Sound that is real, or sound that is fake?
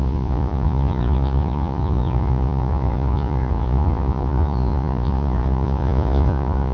fake